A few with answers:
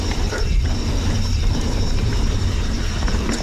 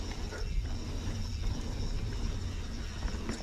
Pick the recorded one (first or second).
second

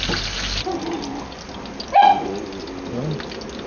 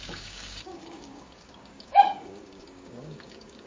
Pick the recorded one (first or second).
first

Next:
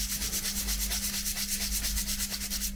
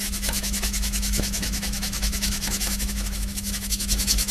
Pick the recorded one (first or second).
first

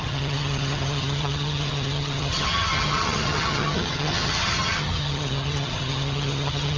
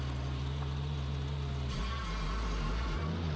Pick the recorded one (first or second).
second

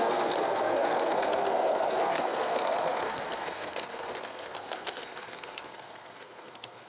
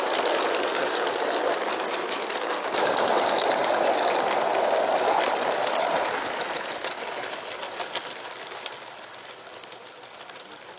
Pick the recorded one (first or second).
second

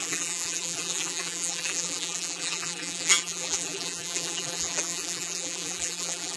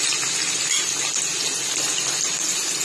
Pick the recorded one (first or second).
second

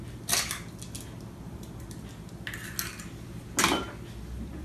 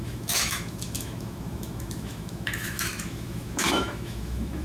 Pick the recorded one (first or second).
first